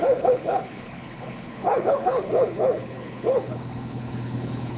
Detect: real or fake fake